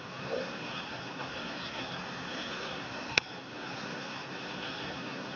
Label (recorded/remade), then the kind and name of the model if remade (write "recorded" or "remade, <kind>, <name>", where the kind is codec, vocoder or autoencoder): remade, codec, SNAC